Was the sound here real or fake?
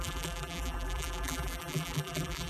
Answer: fake